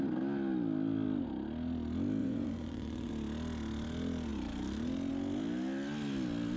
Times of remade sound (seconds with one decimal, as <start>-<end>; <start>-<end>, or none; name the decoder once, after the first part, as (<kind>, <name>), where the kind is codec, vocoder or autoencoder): 2.2-3.1 (vocoder, Vocos)